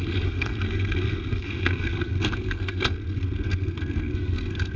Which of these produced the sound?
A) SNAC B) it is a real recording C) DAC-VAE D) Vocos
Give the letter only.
A